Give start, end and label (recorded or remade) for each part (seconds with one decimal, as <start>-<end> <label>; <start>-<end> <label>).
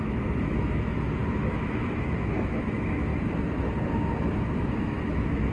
0.0-3.1 remade; 3.1-4.3 recorded; 4.3-5.5 remade